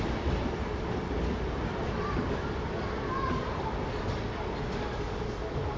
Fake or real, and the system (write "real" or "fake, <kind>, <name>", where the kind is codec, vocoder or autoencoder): real